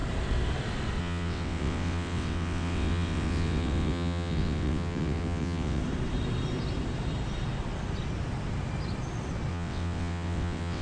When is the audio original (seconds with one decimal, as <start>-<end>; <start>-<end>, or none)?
0.0-1.0; 5.8-9.5